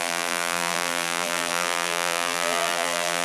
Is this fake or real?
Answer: fake